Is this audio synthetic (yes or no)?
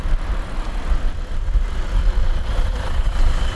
no